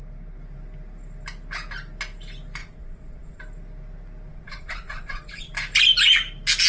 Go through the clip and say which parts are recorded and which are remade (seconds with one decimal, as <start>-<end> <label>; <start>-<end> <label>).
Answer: 0.0-2.6 recorded; 2.6-3.4 remade; 3.4-4.3 recorded; 4.3-5.5 remade; 5.5-6.7 recorded